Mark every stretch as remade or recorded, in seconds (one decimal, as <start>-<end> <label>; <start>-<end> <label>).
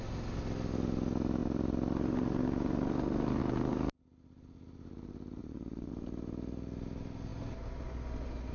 0.0-5.4 recorded; 5.4-5.9 remade; 5.9-8.5 recorded